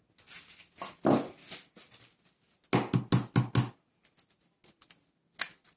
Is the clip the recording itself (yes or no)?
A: yes